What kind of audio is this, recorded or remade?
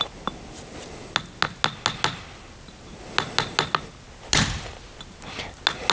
recorded